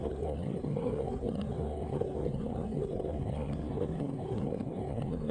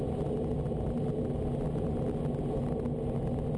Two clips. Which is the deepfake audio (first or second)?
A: first